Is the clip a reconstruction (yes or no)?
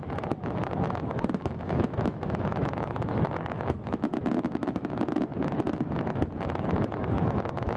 yes